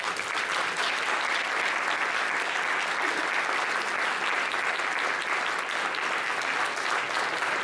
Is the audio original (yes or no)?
yes